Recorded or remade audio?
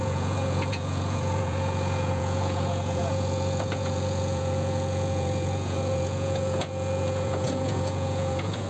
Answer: remade